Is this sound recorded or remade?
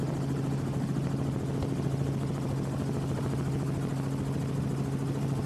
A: recorded